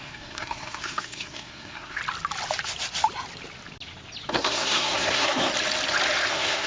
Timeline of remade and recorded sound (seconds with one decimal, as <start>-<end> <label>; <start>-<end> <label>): 0.0-2.0 remade; 2.0-4.3 recorded; 4.3-5.5 remade; 5.5-6.3 recorded; 6.3-6.7 remade